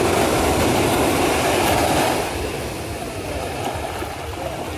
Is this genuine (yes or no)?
yes